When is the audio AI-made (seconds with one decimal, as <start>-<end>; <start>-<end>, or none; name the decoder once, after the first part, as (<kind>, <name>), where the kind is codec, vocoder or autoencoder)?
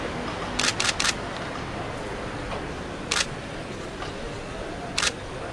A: none